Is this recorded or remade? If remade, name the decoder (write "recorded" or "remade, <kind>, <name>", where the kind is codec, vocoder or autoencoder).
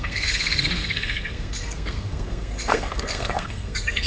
remade, codec, SNAC